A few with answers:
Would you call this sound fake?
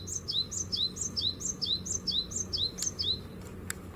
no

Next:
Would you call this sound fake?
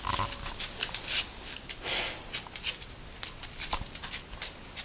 no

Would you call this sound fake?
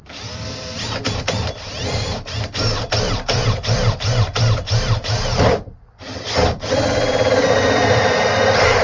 yes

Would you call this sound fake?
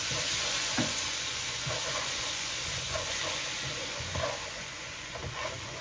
yes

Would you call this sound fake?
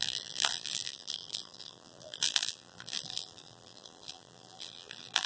yes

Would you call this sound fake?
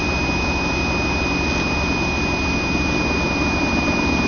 no